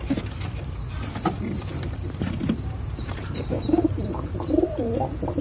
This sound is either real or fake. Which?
fake